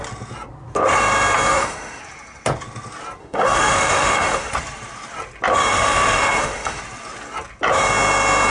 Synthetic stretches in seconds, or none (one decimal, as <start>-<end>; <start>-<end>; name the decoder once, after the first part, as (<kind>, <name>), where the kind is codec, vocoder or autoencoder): 1.5-2.0 (autoencoder, DAC-VAE); 3.2-4.5; 5.7-6.8